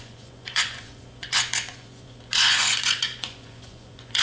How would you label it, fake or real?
fake